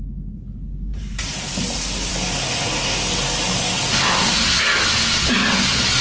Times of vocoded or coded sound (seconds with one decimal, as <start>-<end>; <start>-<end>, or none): 0.9-1.5